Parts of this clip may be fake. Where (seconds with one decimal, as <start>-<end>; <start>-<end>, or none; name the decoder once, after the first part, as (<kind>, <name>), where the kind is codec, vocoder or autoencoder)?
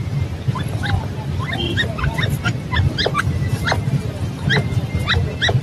none